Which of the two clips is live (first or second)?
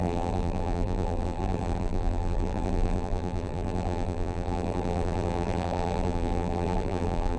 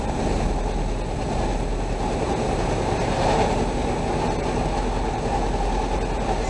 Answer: second